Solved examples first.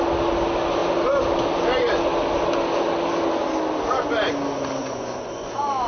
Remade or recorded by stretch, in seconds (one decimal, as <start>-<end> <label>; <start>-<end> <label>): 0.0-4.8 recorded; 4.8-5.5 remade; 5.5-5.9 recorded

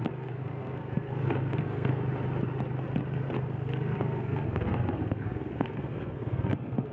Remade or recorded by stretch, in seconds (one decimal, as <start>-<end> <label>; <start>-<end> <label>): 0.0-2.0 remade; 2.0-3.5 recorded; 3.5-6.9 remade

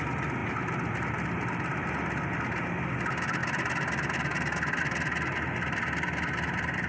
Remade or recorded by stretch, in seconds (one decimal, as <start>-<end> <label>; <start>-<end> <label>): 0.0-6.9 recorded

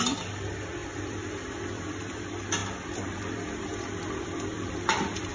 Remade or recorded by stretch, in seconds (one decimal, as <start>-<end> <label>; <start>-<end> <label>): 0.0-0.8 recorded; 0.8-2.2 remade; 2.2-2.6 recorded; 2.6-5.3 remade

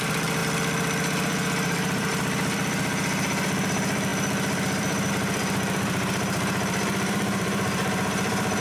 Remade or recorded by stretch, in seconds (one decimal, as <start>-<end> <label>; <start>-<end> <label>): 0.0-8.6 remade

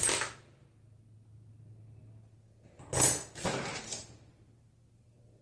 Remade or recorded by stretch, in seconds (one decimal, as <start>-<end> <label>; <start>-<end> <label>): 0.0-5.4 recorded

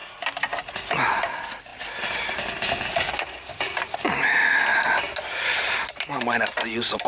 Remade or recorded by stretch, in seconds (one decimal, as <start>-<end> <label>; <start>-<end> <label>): 0.0-7.1 recorded